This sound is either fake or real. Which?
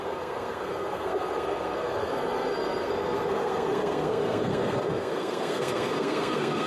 fake